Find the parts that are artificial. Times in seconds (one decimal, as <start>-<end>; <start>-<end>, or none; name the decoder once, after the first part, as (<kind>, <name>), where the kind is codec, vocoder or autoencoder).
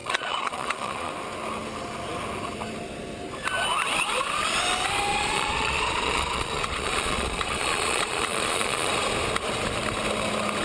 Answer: 0.0-1.1 (vocoder, Vocos); 5.1-8.9